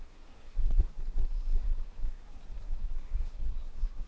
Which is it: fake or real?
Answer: fake